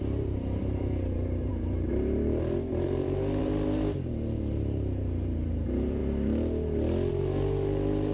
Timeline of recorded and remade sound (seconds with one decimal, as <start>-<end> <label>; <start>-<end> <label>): 0.0-6.0 remade; 6.0-7.1 recorded; 7.1-8.1 remade